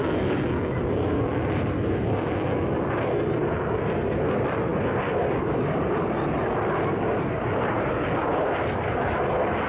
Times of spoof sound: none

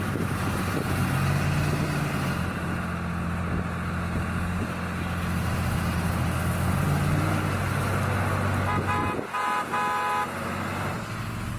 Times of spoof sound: 9.0-9.6 (vocoder, Vocos)

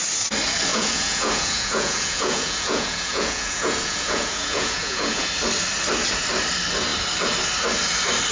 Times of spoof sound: 0.7-5.3 (vocoder, Vocos)

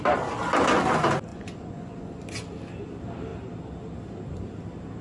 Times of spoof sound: 1.3-2.2 (vocoder, Vocos)

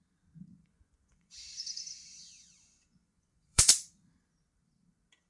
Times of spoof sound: 0.5-3.7 (vocoder, Vocos)

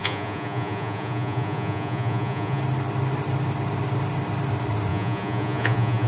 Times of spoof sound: 0.0-2.6 (vocoder, Vocos); 4.9-6.1

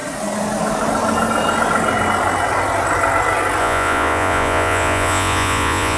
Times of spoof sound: 3.6-6.0 (vocoder, Vocos)